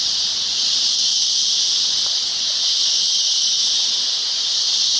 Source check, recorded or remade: recorded